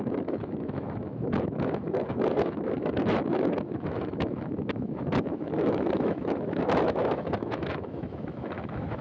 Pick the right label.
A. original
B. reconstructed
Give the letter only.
B